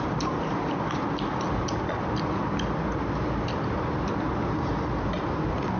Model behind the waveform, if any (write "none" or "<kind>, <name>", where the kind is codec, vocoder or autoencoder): none